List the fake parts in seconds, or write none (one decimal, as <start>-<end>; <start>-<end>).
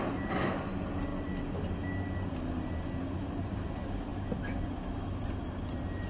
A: none